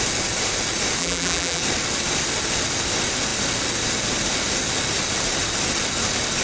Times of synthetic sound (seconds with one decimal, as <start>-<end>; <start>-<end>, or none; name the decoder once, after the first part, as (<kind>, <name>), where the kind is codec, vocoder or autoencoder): 1.0-1.6 (vocoder, BigVGAN v2)